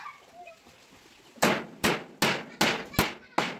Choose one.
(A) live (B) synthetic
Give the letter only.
A